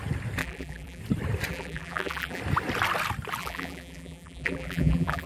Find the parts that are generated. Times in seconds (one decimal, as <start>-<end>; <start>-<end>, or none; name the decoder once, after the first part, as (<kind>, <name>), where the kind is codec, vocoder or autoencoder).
0.4-1.0 (vocoder, BigVGAN v2); 1.5-2.4; 3.4-5.3

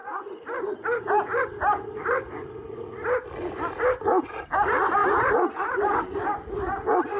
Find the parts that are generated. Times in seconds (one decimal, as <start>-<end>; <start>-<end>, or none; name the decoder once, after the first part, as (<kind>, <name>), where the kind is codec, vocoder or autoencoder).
0.0-0.8 (vocoder, BigVGAN v2); 5.0-6.0